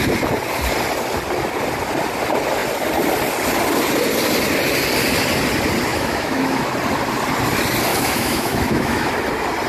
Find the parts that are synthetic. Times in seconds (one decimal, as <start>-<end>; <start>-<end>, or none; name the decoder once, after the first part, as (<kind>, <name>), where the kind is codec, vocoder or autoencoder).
5.9-6.7 (autoencoder, DAC-VAE); 7.9-9.1